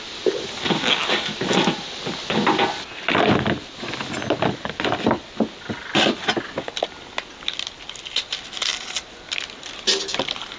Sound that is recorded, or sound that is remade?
recorded